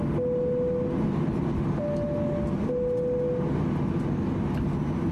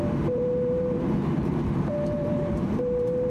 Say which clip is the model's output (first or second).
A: second